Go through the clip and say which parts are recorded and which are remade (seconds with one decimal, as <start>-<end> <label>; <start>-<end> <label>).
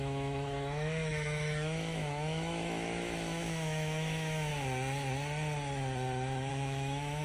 0.0-4.5 remade; 4.5-6.5 recorded; 6.5-7.2 remade